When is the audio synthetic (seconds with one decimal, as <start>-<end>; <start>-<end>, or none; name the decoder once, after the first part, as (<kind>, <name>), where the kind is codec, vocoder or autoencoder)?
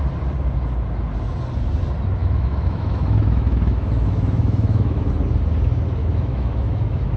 2.2-5.1 (autoencoder, DAC-VAE); 6.0-7.2